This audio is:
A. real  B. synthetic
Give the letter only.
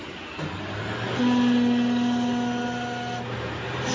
A